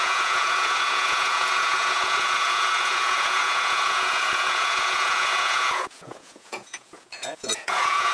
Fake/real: fake